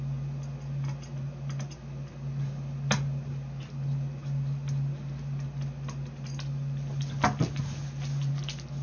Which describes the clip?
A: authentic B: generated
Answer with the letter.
A